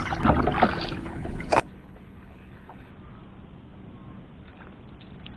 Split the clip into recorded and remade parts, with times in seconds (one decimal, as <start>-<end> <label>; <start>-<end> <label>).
0.0-1.0 recorded; 1.0-2.9 remade; 2.9-5.4 recorded